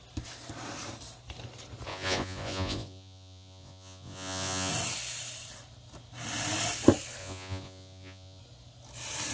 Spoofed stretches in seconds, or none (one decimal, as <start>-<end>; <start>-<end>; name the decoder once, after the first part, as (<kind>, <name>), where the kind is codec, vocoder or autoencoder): 1.9-4.7 (vocoder, Vocos); 7.2-8.4